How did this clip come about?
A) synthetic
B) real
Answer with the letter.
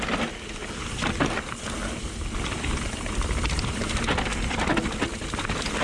B